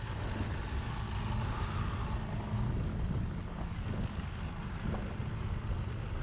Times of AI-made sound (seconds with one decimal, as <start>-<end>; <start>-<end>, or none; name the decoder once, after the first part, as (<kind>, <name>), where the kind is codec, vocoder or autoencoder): 2.9-4.4 (codec, DAC)